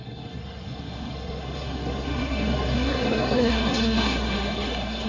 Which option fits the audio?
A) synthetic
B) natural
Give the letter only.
A